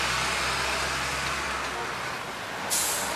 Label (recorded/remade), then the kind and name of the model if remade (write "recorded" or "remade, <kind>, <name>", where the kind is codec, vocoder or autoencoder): recorded